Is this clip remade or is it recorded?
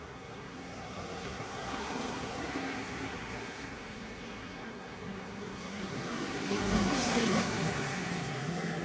remade